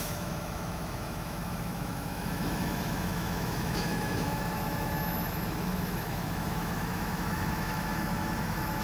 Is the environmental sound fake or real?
fake